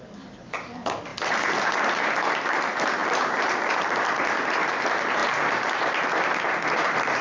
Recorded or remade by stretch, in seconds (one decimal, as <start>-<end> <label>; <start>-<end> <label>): 0.0-3.0 recorded; 3.0-3.7 remade; 3.7-7.2 recorded